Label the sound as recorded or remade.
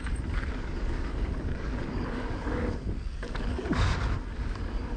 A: remade